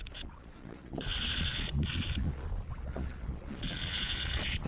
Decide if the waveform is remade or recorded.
remade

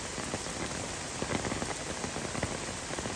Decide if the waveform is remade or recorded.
recorded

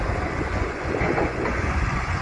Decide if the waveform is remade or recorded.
remade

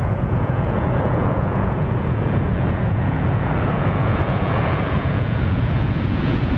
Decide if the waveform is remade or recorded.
remade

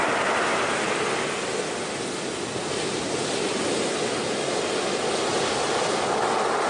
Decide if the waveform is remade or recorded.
recorded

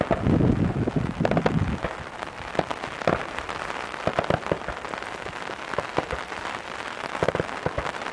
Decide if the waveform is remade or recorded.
recorded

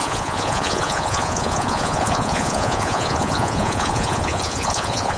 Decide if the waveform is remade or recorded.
remade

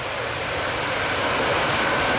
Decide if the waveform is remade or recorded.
recorded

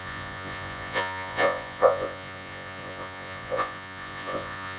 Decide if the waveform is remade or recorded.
remade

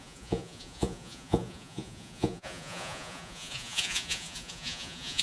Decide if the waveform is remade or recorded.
remade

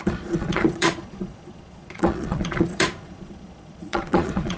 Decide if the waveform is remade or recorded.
remade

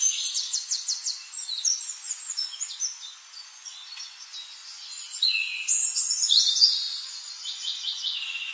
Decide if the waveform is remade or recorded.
remade